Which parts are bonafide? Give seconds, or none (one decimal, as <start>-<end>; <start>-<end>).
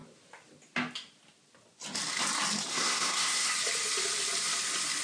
0.0-2.7; 3.5-5.0